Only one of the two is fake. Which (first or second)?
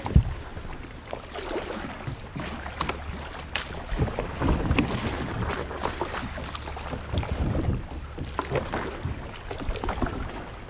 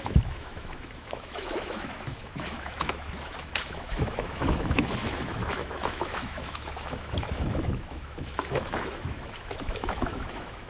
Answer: second